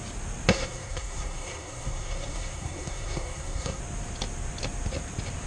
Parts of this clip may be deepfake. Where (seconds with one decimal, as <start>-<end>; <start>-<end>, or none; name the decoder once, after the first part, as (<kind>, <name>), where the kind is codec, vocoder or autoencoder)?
0.5-3.8 (codec, SNAC)